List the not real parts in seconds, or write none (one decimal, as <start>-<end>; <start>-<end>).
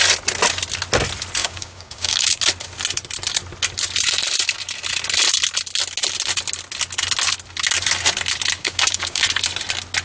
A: 1.4-2.4; 8.6-9.2